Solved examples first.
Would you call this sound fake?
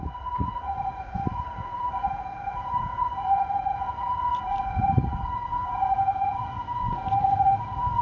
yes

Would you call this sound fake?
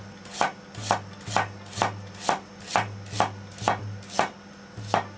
no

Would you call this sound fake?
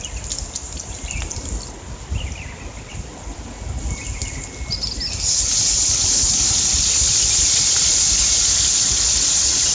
no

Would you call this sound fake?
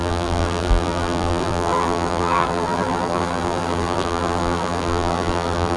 yes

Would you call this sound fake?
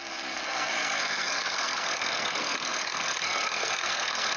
yes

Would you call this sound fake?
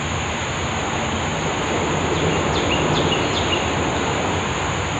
no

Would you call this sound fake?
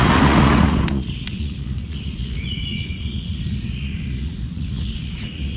yes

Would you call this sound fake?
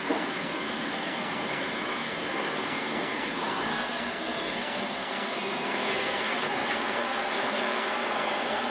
yes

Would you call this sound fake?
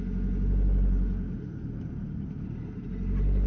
no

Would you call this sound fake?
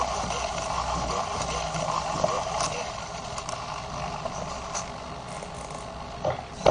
no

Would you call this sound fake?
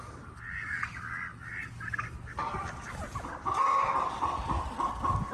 no